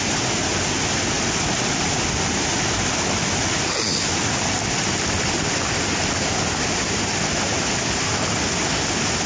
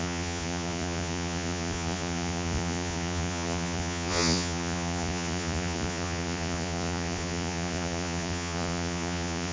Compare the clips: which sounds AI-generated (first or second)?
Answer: second